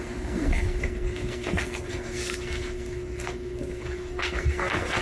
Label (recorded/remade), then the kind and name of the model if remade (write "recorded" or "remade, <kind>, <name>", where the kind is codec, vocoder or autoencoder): remade, codec, SNAC